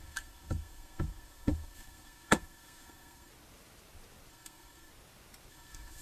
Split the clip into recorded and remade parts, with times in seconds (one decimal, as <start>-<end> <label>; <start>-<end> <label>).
0.0-3.3 remade; 3.3-4.3 recorded; 4.3-4.9 remade; 4.9-5.5 recorded; 5.5-6.0 remade